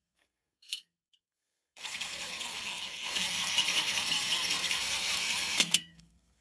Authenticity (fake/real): fake